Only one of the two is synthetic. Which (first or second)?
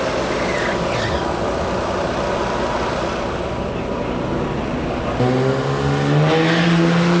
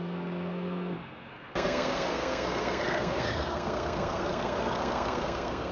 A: second